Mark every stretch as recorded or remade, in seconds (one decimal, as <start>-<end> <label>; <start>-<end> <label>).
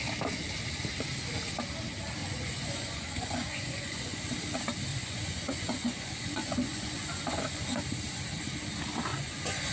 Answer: 0.0-2.2 recorded; 2.2-4.2 remade; 4.2-4.9 recorded; 4.9-7.8 remade; 7.8-9.1 recorded; 9.1-9.7 remade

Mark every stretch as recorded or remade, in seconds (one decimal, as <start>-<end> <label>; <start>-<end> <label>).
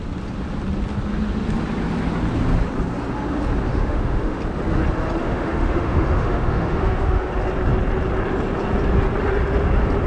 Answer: 0.0-3.7 recorded; 3.7-4.4 remade; 4.4-5.2 recorded; 5.2-7.3 remade; 7.3-10.1 recorded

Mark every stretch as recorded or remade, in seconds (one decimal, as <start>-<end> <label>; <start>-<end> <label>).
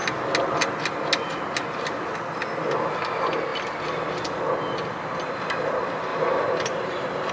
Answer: 0.0-6.1 recorded; 6.1-7.3 remade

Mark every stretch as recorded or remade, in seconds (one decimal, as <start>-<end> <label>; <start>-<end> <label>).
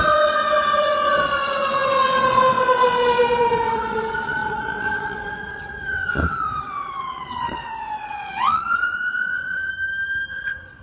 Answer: 0.0-9.7 remade; 9.7-10.3 recorded; 10.3-10.8 remade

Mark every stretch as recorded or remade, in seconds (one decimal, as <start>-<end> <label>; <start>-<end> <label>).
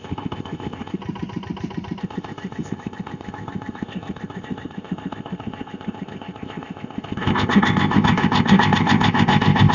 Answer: 0.0-1.0 remade; 1.0-2.0 recorded; 2.0-9.7 remade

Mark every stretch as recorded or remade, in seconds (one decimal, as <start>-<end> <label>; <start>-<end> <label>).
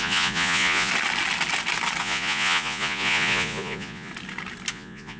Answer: 0.0-0.9 remade; 0.9-2.0 recorded; 2.0-4.1 remade; 4.1-4.7 recorded; 4.7-5.2 remade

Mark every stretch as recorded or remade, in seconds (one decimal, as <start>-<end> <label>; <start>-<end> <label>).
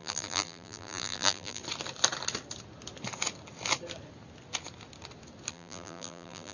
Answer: 0.0-1.6 remade; 1.6-5.5 recorded; 5.5-6.5 remade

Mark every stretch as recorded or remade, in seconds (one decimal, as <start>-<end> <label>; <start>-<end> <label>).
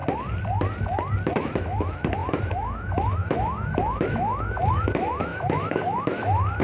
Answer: 0.0-1.4 recorded; 1.4-6.6 remade